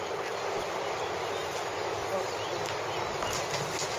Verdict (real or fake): real